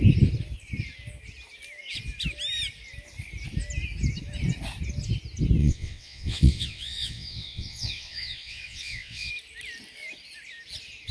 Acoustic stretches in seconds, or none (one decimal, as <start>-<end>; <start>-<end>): 0.0-5.6; 9.3-11.1